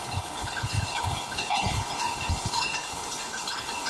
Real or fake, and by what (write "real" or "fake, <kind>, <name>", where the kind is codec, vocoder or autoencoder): fake, codec, HILCodec